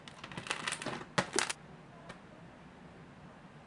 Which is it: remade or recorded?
recorded